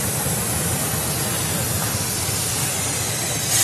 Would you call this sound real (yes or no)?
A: yes